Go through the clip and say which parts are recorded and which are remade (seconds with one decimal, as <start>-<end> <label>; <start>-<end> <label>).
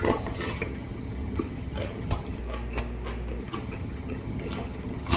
0.0-2.4 remade; 2.4-3.4 recorded; 3.4-5.2 remade